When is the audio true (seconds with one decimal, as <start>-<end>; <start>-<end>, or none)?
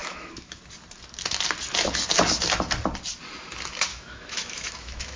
0.6-3.9